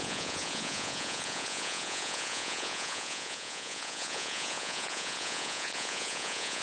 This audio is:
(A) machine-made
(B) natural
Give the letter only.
A